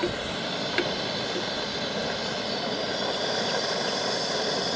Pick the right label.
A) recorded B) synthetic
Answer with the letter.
A